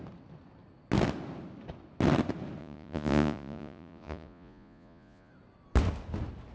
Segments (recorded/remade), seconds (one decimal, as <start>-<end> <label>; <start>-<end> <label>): 0.0-2.6 recorded; 2.6-5.3 remade; 5.3-6.5 recorded